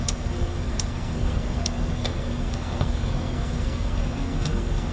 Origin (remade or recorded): remade